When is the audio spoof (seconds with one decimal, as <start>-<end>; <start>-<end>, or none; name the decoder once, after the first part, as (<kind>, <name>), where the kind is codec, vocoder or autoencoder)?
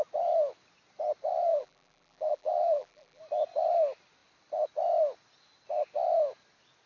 1.5-3.2 (vocoder, BigVGAN v2)